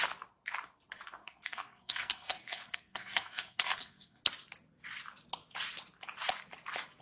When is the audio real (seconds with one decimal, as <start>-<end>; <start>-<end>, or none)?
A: 0.0-1.2; 4.2-7.0